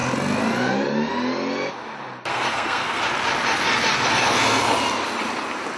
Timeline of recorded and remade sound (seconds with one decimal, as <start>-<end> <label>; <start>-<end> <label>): 0.0-2.3 recorded; 2.3-3.0 remade; 3.0-4.1 recorded; 4.1-4.6 remade; 4.6-5.8 recorded